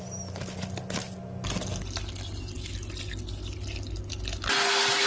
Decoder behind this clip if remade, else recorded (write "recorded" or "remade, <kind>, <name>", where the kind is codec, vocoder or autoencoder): recorded